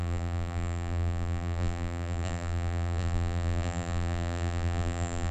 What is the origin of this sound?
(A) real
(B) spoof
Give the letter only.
B